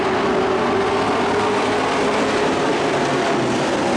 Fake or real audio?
real